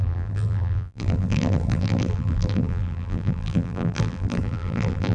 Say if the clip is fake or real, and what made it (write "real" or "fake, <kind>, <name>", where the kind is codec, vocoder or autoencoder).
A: fake, vocoder, BigVGAN v2